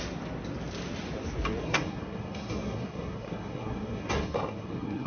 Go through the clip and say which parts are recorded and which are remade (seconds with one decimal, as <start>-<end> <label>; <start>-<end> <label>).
0.0-1.6 recorded; 1.6-5.1 remade